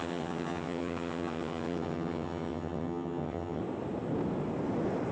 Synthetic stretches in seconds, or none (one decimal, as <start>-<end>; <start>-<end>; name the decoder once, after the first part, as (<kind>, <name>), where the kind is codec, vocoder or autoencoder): 0.0-3.6 (vocoder, HiFi-GAN)